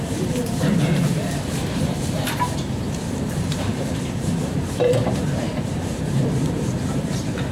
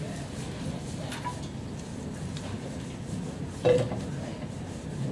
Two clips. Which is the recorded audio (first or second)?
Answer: second